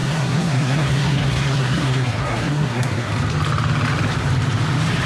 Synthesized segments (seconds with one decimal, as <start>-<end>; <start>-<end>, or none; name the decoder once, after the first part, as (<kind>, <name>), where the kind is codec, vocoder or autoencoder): 0.0-3.1 (codec, SNAC)